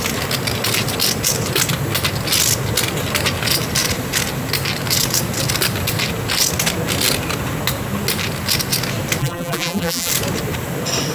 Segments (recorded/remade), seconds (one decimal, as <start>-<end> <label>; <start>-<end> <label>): 0.0-9.2 recorded; 9.2-10.1 remade; 10.1-11.1 recorded